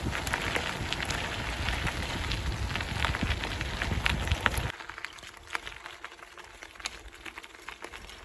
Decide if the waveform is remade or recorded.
recorded